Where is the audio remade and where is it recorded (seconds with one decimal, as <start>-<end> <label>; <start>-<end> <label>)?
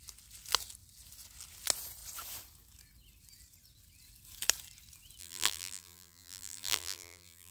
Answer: 0.0-5.2 recorded; 5.2-7.5 remade